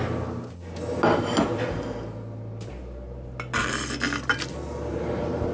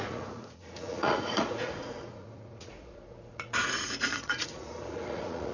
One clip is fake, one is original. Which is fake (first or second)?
second